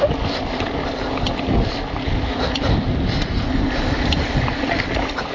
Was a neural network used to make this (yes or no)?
no